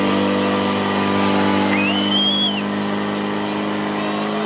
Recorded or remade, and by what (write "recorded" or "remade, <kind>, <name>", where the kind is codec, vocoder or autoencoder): recorded